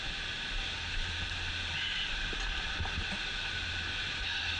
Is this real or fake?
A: real